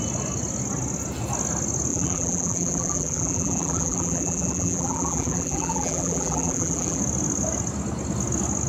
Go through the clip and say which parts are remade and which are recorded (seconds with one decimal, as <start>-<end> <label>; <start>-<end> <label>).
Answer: 0.0-1.9 recorded; 1.9-7.0 remade; 7.0-8.7 recorded